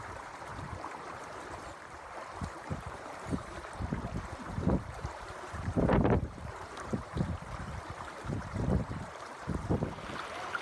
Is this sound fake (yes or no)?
yes